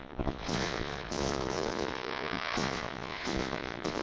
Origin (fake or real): fake